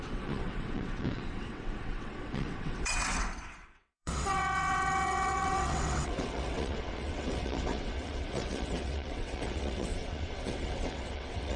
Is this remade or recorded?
remade